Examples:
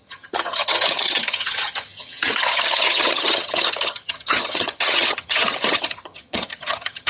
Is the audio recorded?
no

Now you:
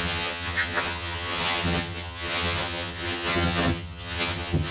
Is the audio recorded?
no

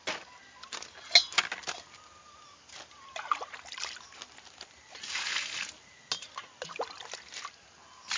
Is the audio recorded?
yes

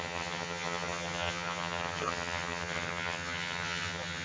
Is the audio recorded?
no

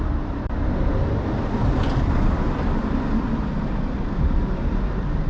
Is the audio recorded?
yes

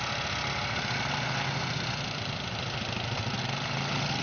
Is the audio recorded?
yes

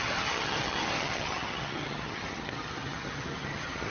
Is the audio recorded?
no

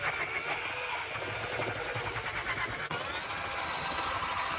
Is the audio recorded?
yes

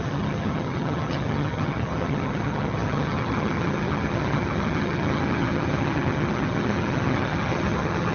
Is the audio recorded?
no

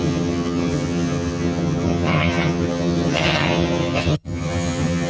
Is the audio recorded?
no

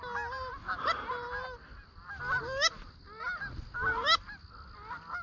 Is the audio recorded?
yes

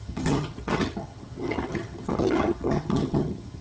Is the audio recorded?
no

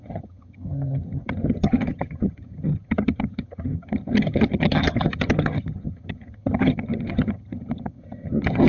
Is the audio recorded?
no